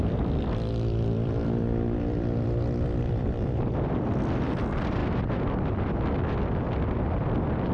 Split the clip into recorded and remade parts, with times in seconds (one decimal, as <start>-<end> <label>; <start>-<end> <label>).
0.0-5.0 remade; 5.0-6.8 recorded; 6.8-7.7 remade